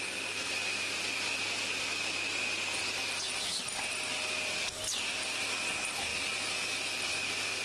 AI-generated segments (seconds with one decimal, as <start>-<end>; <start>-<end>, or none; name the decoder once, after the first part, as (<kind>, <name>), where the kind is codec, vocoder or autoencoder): none